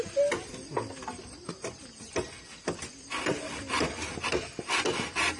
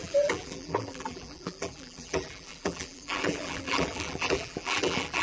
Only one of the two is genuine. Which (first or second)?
first